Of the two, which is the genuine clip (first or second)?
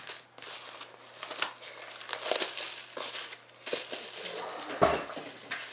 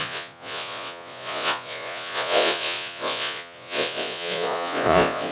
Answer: first